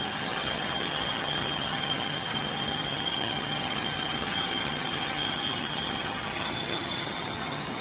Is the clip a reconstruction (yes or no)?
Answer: yes